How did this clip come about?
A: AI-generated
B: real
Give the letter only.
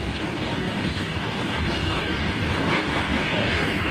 A